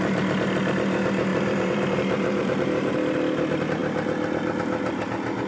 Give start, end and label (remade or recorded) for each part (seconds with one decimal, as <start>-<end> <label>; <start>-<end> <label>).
0.0-1.3 recorded; 1.3-2.9 remade; 2.9-5.5 recorded